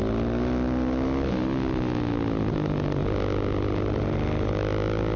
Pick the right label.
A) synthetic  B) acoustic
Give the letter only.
B